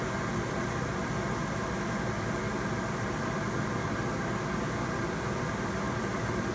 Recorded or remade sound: recorded